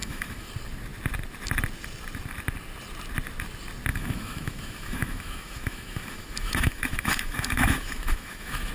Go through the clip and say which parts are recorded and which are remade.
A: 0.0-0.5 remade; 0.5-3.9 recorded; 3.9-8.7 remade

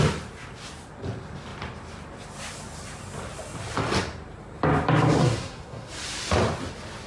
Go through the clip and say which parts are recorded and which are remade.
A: 0.0-5.2 recorded; 5.2-5.9 remade; 5.9-7.1 recorded

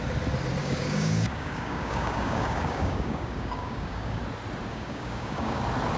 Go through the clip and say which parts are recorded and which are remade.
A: 0.0-0.6 recorded; 0.6-4.2 remade; 4.2-4.7 recorded; 4.7-5.6 remade; 5.6-6.0 recorded

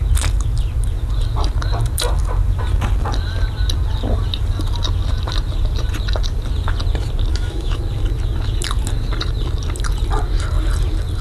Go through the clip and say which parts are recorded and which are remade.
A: 0.0-7.3 recorded; 7.3-7.8 remade; 7.8-11.2 recorded

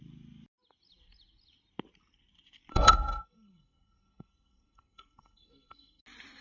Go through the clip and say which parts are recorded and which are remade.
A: 0.0-2.7 recorded; 2.7-6.0 remade; 6.0-6.4 recorded